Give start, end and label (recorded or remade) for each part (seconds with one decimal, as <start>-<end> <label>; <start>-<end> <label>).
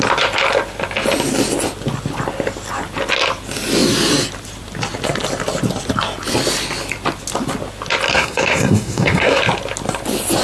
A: 0.0-8.1 recorded; 8.1-9.4 remade; 9.4-10.4 recorded